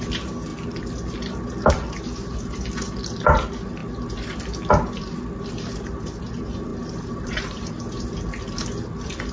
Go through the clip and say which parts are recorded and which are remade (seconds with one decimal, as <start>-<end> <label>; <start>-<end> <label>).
0.0-6.7 recorded; 6.7-7.7 remade; 7.7-9.3 recorded